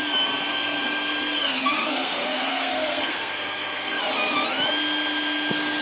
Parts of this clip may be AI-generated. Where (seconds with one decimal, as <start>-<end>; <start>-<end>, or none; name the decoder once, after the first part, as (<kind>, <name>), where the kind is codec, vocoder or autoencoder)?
0.5-4.0 (codec, SNAC)